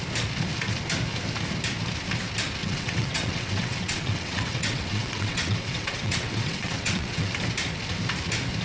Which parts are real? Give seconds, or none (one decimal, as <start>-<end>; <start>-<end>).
0.0-2.6; 7.3-8.6

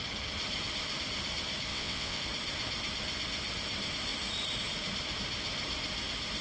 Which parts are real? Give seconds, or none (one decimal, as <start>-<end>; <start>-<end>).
0.0-1.7; 2.2-6.4